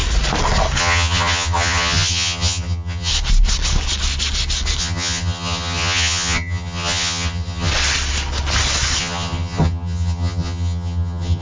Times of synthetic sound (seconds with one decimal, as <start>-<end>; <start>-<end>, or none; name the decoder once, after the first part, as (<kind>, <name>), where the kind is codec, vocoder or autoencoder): 0.8-3.1 (vocoder, HiFi-GAN); 4.8-7.7; 9.0-11.4